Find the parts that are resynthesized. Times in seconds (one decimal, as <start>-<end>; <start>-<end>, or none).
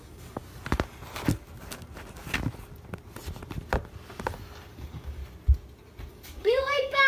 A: 0.0-0.4; 4.7-5.2; 6.1-7.1